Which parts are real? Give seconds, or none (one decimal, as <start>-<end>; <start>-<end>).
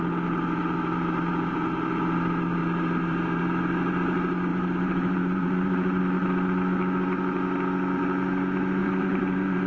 0.0-0.6; 1.3-2.6; 3.4-4.5; 6.0-8.8